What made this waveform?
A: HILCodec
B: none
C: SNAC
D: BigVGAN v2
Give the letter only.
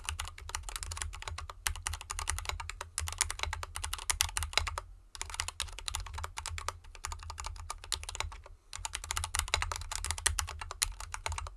B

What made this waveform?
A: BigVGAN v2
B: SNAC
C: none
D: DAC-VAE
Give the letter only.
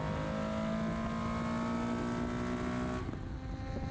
C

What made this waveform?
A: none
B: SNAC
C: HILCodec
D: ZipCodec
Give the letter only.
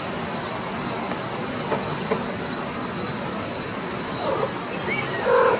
A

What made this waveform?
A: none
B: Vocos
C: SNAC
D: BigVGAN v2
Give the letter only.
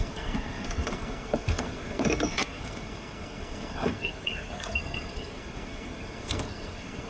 C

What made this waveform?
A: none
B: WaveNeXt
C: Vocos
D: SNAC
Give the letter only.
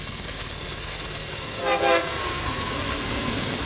D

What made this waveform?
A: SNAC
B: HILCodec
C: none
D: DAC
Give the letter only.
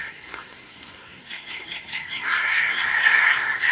A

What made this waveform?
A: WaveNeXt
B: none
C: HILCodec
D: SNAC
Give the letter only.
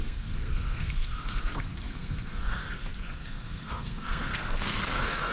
D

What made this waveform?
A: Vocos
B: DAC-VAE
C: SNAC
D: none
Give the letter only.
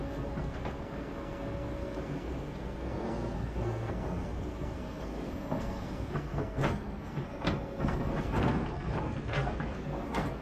C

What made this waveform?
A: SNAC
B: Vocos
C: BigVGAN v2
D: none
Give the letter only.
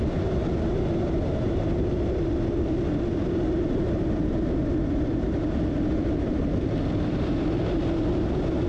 D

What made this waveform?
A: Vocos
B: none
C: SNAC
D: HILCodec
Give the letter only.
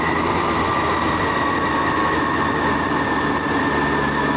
B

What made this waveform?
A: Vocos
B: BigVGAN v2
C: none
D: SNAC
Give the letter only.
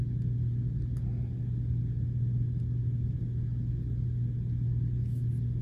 C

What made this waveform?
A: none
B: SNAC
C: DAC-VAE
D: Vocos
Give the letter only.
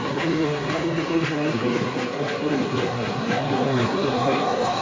B